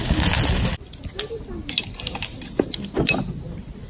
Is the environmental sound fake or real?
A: real